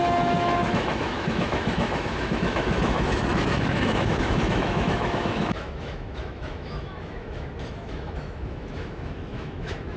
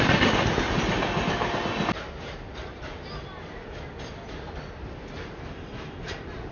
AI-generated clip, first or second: first